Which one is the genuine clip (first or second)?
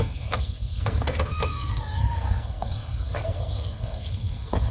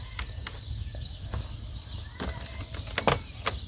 second